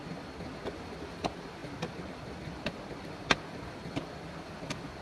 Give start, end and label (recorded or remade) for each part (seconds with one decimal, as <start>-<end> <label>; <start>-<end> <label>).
0.0-5.0 recorded